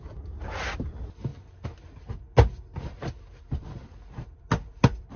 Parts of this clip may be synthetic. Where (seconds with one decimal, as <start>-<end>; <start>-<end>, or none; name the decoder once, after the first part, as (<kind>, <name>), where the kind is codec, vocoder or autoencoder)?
none